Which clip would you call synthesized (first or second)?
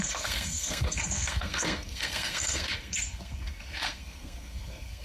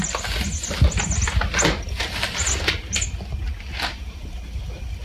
first